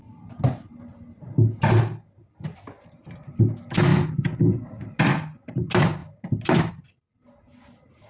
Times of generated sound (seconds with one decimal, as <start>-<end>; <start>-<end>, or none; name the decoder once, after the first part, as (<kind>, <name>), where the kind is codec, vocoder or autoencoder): none